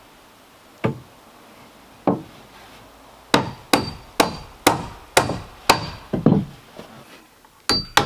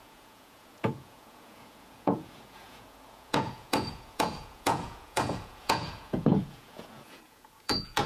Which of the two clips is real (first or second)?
first